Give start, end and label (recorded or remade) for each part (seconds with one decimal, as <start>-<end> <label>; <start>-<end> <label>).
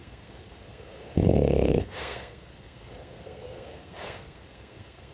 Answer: 0.0-5.1 remade